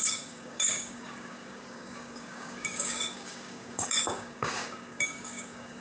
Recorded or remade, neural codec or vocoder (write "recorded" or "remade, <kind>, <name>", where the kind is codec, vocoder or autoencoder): remade, codec, DAC